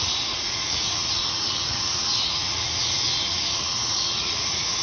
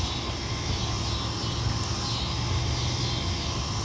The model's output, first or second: first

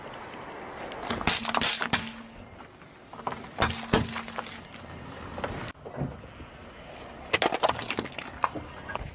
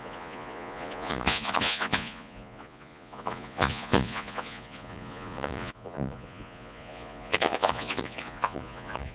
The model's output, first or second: second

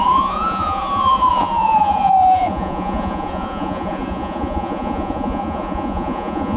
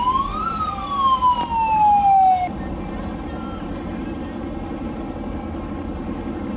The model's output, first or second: first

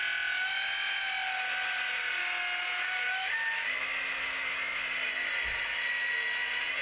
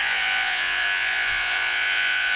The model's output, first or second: second